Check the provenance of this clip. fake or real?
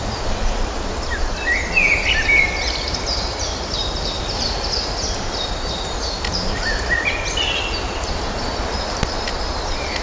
real